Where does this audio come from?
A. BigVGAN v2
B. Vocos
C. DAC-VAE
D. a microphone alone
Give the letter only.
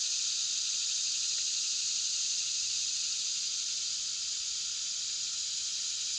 D